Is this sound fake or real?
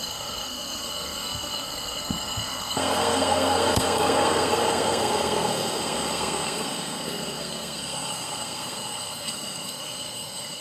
fake